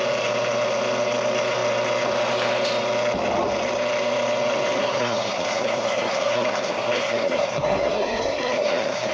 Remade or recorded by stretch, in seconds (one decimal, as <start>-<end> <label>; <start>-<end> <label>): 0.0-4.8 recorded; 4.8-9.1 remade